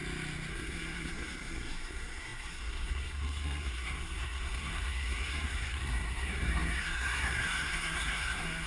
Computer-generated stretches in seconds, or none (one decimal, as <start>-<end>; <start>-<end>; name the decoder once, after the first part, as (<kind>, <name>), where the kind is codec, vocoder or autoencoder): 0.5-8.7 (codec, SNAC)